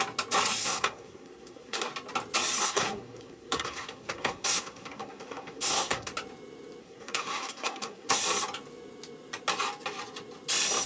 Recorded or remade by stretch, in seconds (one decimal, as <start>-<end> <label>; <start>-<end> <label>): 0.0-0.6 recorded; 0.6-1.9 remade; 1.9-2.6 recorded; 2.6-6.1 remade; 6.1-6.8 recorded; 6.8-8.2 remade; 8.2-10.9 recorded